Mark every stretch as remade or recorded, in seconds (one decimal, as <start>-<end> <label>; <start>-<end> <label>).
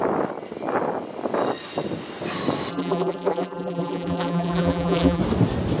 0.0-2.7 recorded; 2.7-5.2 remade; 5.2-5.8 recorded